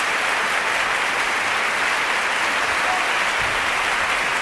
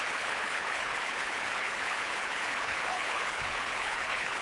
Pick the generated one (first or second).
second